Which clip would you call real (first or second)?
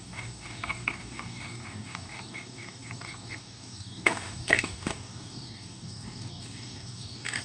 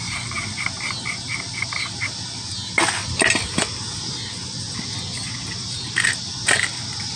second